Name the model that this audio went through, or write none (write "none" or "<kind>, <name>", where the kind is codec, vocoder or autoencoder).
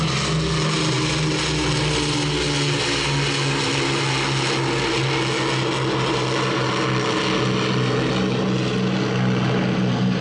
none